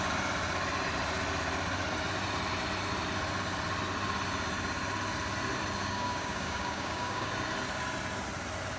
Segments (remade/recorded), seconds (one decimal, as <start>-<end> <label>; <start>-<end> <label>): 0.0-5.8 recorded; 5.8-7.3 remade; 7.3-8.8 recorded